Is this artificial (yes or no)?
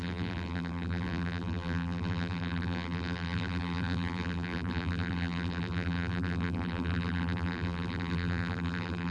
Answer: yes